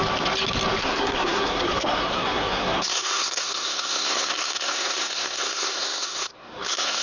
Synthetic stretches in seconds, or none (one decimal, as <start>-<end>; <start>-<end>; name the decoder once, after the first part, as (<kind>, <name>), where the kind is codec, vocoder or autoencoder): 0.8-7.0 (codec, SNAC)